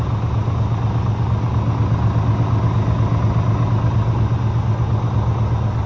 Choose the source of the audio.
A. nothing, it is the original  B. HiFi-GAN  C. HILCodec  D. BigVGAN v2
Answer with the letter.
A